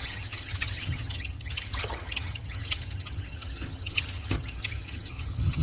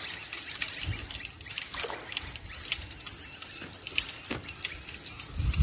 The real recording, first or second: second